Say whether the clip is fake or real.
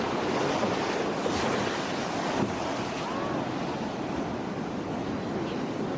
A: real